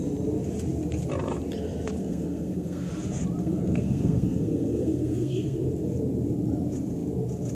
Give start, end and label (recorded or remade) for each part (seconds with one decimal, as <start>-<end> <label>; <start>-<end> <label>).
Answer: 0.0-2.0 recorded; 2.0-2.9 remade; 2.9-3.4 recorded; 3.4-5.6 remade; 5.6-7.5 recorded